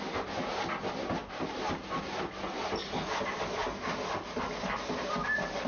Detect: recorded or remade recorded